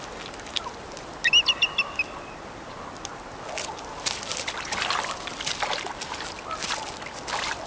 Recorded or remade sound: recorded